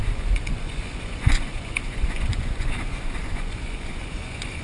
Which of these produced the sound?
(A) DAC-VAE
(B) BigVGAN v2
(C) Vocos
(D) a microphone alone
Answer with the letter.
C